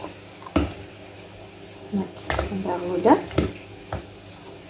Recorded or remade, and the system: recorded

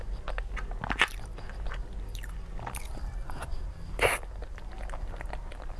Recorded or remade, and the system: recorded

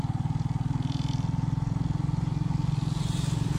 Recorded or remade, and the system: recorded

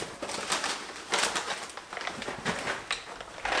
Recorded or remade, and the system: recorded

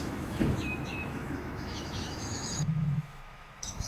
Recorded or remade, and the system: remade, autoencoder, DAC-VAE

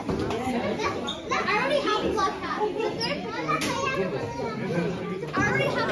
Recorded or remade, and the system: recorded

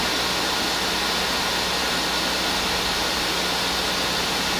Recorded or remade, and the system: recorded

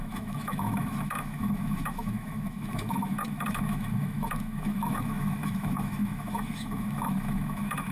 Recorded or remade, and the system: remade, autoencoder, DAC-VAE